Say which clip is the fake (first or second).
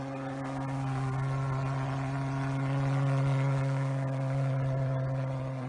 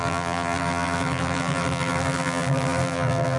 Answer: second